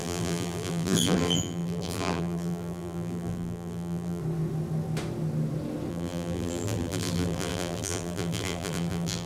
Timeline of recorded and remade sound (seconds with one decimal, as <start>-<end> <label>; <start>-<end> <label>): 0.0-4.2 remade; 4.2-5.9 recorded; 5.9-9.3 remade